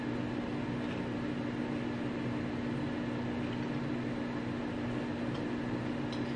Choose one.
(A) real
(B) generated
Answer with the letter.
A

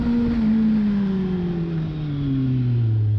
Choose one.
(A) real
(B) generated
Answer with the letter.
A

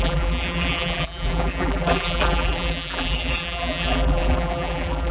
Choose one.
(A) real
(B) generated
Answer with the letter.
B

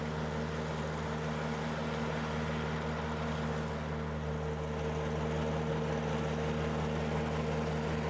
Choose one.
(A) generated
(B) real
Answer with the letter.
B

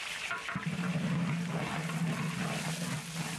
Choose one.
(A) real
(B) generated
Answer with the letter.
A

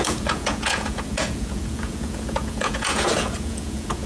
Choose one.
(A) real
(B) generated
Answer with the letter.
B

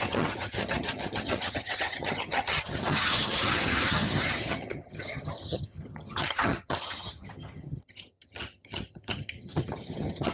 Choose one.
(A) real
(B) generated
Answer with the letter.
B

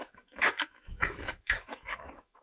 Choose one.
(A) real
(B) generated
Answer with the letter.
B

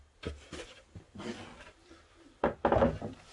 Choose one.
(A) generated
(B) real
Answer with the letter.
B